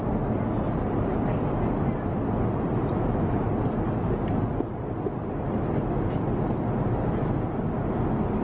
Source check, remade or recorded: recorded